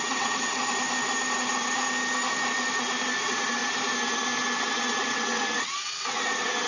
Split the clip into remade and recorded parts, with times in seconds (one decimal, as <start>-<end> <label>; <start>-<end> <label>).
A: 0.0-0.6 remade; 0.6-3.2 recorded; 3.2-3.6 remade; 3.6-4.6 recorded; 4.6-6.7 remade